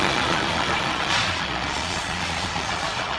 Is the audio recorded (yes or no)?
no